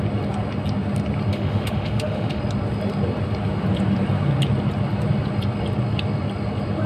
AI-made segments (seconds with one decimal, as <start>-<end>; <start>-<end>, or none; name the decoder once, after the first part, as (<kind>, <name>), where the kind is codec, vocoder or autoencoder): 1.3-2.4 (autoencoder, DAC-VAE)